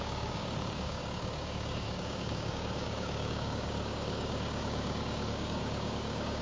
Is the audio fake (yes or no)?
yes